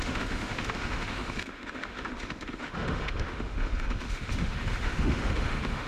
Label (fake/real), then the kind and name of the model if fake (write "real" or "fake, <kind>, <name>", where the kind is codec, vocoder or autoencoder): fake, autoencoder, DAC-VAE